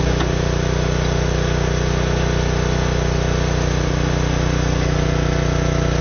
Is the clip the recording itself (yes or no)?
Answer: yes